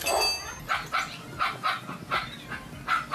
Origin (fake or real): real